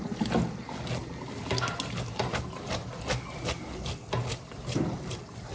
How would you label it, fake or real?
real